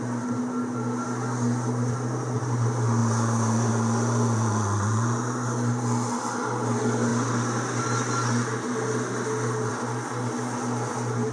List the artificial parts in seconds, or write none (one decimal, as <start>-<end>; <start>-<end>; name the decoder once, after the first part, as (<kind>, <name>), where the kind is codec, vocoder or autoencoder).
3.0-3.7 (vocoder, BigVGAN v2)